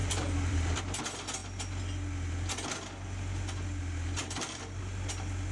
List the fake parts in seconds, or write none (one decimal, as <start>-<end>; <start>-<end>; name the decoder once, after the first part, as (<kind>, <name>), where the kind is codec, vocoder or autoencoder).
0.0-0.8 (vocoder, BigVGAN v2); 4.2-4.8